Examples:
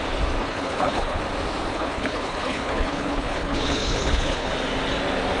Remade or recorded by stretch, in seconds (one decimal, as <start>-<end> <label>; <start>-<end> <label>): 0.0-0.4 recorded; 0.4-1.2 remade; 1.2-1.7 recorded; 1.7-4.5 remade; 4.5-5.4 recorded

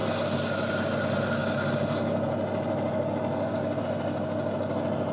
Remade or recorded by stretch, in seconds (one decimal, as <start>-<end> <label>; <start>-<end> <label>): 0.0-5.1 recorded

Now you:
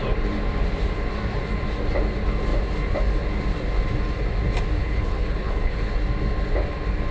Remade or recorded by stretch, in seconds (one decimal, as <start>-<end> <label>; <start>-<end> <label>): 0.0-4.8 recorded; 4.8-5.9 remade; 5.9-7.1 recorded

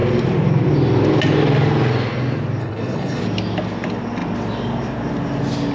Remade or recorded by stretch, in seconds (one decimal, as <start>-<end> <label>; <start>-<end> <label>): 0.0-2.6 recorded; 2.6-3.2 remade; 3.2-5.7 recorded

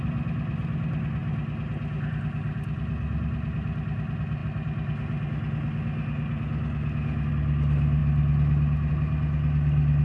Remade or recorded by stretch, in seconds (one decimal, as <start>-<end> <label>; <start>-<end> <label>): 0.0-10.0 recorded

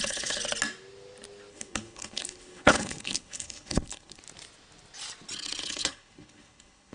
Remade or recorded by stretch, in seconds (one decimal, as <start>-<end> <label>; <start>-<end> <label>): 0.0-0.4 remade; 0.4-1.5 recorded; 1.5-4.2 remade; 4.2-5.6 recorded; 5.6-6.9 remade

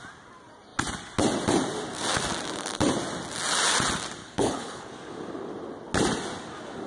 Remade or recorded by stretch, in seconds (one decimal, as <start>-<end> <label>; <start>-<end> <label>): 0.0-4.2 recorded; 4.2-4.9 remade; 4.9-6.9 recorded